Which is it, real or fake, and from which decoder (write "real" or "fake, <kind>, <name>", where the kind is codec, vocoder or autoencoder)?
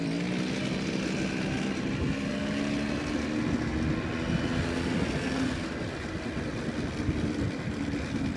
real